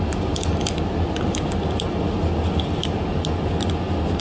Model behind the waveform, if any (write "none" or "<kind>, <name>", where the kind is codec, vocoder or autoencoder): none